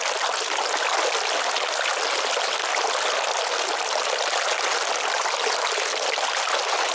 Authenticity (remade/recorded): recorded